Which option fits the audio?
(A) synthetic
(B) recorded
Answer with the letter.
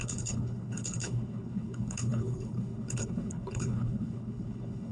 A